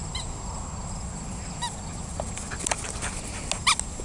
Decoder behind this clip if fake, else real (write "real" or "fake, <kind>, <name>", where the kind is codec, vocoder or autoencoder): real